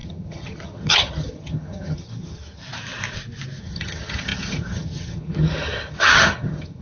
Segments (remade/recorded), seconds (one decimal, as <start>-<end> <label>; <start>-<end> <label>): 0.0-2.6 remade; 2.6-3.6 recorded; 3.6-6.8 remade